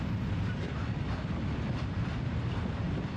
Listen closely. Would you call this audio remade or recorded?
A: recorded